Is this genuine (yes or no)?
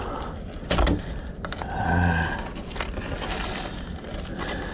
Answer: yes